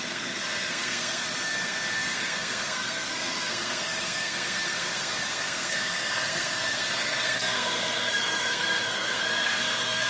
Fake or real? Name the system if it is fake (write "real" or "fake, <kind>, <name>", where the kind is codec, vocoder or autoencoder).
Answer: fake, codec, SNAC